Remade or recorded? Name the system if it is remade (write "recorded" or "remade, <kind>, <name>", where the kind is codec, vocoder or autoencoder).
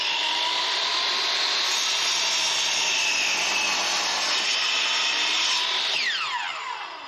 recorded